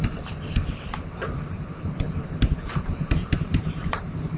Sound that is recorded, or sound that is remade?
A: remade